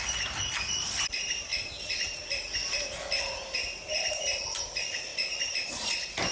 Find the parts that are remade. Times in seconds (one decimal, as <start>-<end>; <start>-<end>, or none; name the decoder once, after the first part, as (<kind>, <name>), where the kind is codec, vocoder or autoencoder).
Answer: none